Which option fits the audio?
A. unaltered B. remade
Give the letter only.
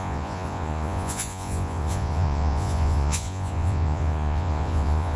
B